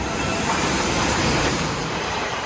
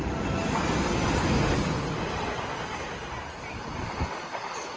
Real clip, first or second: second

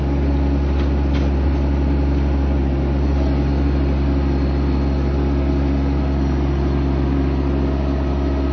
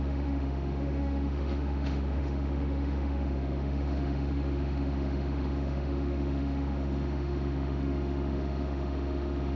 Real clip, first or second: first